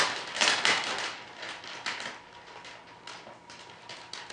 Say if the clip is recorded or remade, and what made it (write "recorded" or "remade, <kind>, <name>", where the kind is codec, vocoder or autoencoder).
recorded